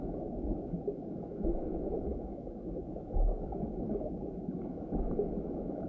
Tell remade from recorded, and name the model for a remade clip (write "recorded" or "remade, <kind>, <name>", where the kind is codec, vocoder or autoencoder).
remade, autoencoder, DAC-VAE